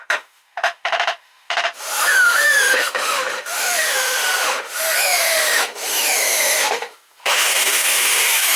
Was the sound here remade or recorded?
remade